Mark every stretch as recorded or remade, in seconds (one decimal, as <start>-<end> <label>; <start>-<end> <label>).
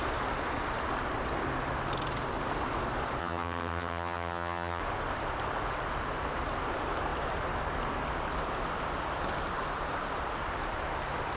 0.0-3.2 recorded; 3.2-4.8 remade; 4.8-11.4 recorded